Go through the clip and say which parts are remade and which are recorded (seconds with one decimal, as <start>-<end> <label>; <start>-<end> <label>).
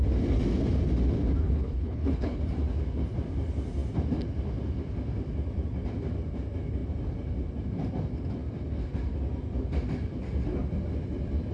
0.0-1.4 recorded; 1.4-2.4 remade; 2.4-11.5 recorded